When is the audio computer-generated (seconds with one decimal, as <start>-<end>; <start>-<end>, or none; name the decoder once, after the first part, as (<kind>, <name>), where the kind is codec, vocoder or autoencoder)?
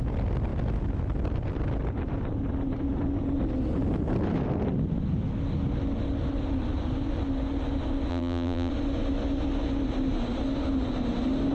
8.1-8.7 (vocoder, BigVGAN v2)